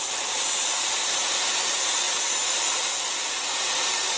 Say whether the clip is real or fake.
fake